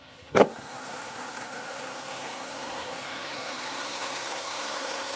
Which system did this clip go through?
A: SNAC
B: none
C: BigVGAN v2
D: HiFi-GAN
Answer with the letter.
A